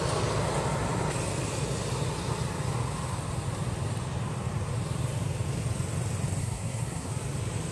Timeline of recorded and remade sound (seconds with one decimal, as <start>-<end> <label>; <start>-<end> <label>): 0.0-6.4 recorded; 6.4-7.1 remade; 7.1-7.7 recorded